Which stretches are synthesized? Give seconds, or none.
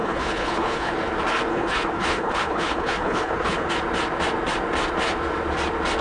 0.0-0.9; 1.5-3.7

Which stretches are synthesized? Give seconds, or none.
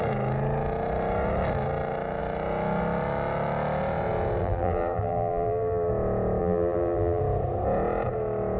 4.4-5.9; 6.4-7.2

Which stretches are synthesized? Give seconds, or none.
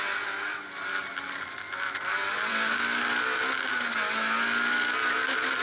2.5-3.0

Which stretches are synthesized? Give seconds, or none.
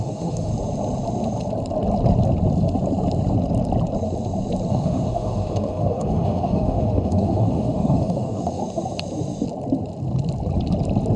0.0-0.5; 4.7-8.6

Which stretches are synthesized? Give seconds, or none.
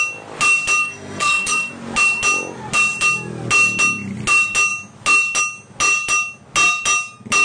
0.8-1.7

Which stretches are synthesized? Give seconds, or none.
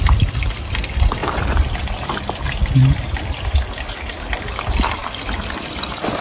1.2-2.6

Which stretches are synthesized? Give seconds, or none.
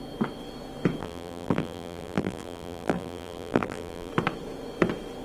1.0-4.1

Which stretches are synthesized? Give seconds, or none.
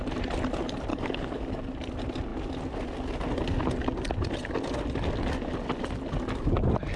0.9-1.6